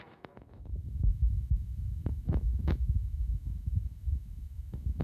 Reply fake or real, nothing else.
fake